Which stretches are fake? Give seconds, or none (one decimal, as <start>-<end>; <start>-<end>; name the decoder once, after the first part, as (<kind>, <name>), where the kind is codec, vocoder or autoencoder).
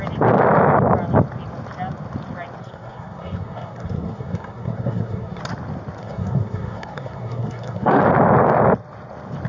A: 2.6-5.4 (codec, SNAC); 6.0-8.0